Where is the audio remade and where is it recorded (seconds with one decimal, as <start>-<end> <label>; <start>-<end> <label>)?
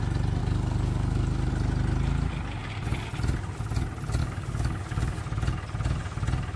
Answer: 0.0-0.4 recorded; 0.4-1.5 remade; 1.5-4.2 recorded; 4.2-5.2 remade; 5.2-6.6 recorded